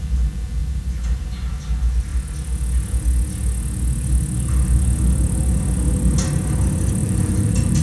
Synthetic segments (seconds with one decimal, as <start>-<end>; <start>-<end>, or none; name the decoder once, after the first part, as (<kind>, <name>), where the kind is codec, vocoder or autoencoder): 0.6-1.5 (vocoder, BigVGAN v2); 7.0-7.8